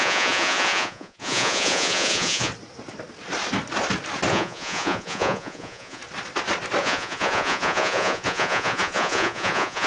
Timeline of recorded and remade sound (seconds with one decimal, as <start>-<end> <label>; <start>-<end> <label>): 0.0-2.5 remade; 2.5-4.3 recorded; 4.3-6.0 remade; 6.0-6.8 recorded; 6.8-9.9 remade